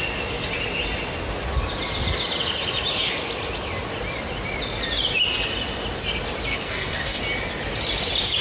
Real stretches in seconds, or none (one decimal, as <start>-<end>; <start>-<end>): 0.0-6.5; 7.2-8.4